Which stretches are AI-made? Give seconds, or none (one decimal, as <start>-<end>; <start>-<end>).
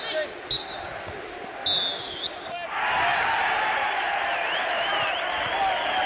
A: 3.1-4.9